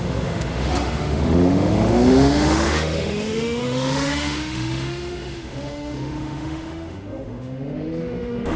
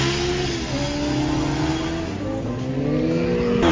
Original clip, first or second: second